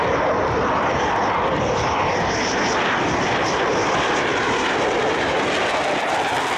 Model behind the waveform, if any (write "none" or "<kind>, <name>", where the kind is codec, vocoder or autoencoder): none